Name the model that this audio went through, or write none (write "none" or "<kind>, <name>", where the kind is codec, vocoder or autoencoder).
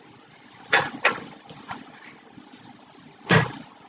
none